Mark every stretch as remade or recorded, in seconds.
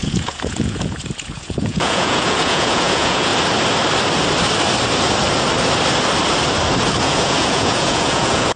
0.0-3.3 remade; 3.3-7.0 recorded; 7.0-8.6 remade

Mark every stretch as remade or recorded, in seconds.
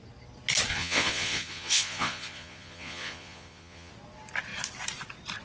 0.0-0.7 recorded; 0.7-3.9 remade; 3.9-5.4 recorded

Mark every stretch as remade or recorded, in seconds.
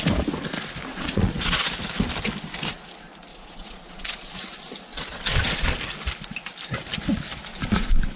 0.0-0.9 recorded; 0.9-1.6 remade; 1.6-3.3 recorded; 3.3-4.3 remade; 4.3-4.9 recorded; 4.9-5.8 remade; 5.8-8.2 recorded